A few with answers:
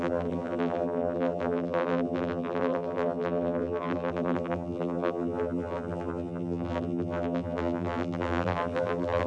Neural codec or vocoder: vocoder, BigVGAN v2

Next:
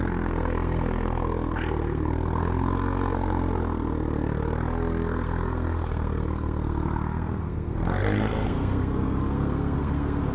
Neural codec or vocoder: codec, SNAC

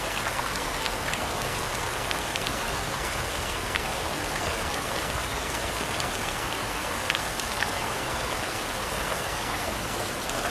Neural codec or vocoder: codec, SNAC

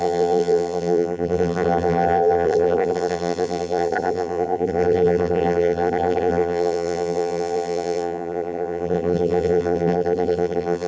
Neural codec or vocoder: vocoder, BigVGAN v2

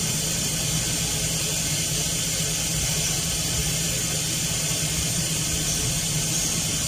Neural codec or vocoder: vocoder, BigVGAN v2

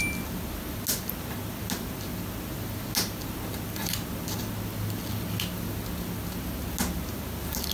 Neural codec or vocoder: none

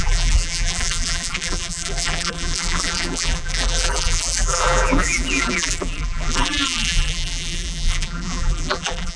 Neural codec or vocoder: vocoder, BigVGAN v2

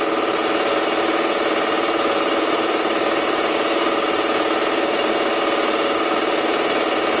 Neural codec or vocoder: none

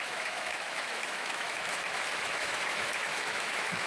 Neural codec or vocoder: autoencoder, DAC-VAE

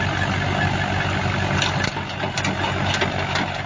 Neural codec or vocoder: none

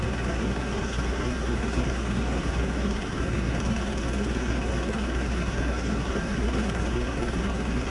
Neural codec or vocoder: codec, SNAC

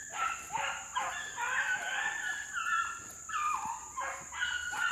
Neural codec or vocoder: none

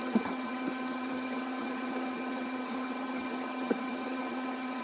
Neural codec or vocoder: vocoder, HiFi-GAN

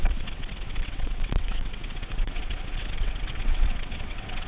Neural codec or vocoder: vocoder, WaveNeXt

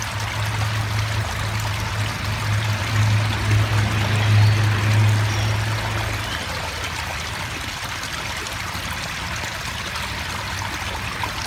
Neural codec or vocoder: none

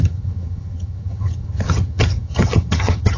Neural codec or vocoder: vocoder, HiFi-GAN